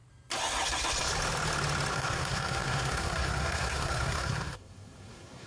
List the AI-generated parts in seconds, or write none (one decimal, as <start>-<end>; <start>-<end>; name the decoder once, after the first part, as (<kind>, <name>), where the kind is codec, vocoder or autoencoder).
1.9-5.5 (codec, SNAC)